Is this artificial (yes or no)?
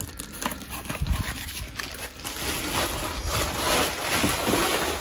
no